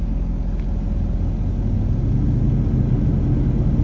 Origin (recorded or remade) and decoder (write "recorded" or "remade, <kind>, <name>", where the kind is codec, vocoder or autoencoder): recorded